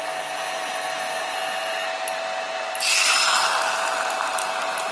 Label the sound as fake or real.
real